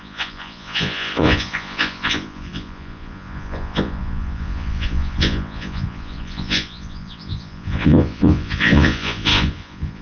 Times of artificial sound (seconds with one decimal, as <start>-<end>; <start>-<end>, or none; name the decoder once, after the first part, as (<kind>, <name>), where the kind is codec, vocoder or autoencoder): 0.0-10.0 (vocoder, Vocos)